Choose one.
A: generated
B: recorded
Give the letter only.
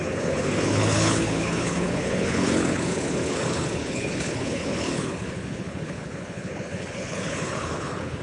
A